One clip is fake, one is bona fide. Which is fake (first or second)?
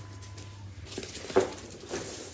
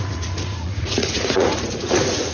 second